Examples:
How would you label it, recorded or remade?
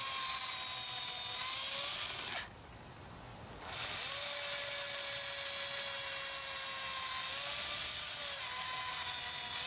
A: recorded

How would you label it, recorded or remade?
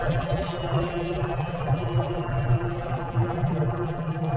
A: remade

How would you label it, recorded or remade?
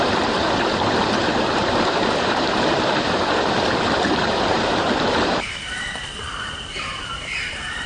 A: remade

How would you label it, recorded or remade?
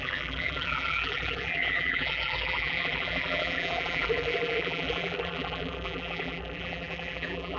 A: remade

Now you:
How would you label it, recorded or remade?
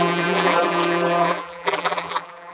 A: remade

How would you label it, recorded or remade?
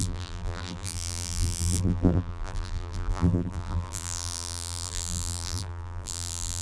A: remade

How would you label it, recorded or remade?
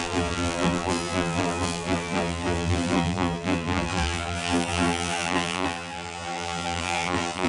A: remade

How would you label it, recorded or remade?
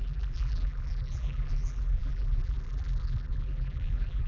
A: remade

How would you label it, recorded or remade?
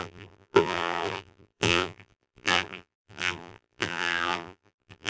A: remade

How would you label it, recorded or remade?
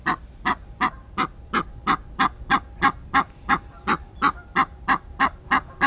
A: recorded